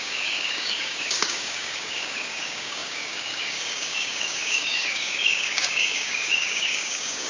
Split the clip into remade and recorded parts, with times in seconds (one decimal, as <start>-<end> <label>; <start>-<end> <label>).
0.0-7.3 remade